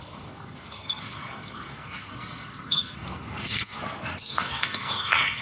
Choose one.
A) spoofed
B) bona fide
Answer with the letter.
A